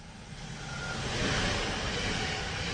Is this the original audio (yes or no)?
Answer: yes